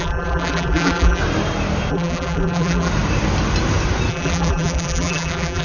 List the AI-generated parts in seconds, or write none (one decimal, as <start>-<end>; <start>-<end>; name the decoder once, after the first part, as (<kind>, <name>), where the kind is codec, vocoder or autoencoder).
0.0-1.2 (vocoder, BigVGAN v2); 1.9-2.9; 4.1-5.6